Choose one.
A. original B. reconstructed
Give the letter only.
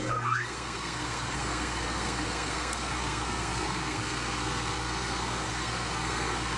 B